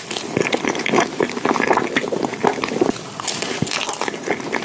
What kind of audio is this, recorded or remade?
recorded